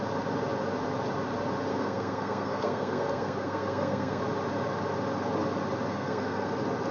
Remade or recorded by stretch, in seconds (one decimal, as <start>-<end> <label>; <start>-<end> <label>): 0.0-1.7 recorded; 1.7-4.2 remade; 4.2-5.9 recorded; 5.9-6.5 remade; 6.5-6.9 recorded